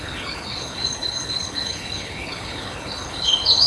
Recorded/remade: remade